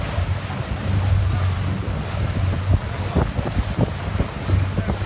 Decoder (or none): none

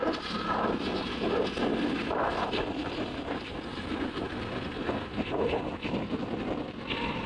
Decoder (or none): vocoder, BigVGAN v2